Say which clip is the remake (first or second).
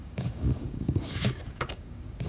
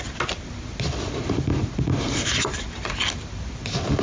first